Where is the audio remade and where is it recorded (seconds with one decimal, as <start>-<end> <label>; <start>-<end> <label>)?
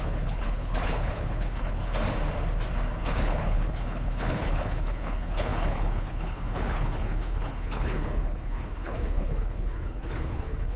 0.0-1.8 remade; 1.8-3.0 recorded; 3.0-10.8 remade